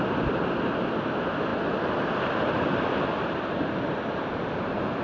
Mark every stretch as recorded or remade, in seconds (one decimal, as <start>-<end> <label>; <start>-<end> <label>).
0.0-5.0 recorded